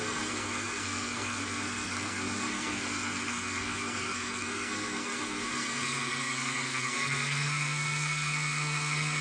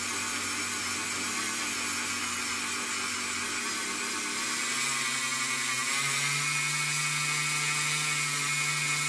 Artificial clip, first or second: first